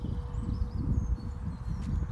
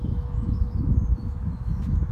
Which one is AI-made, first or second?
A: second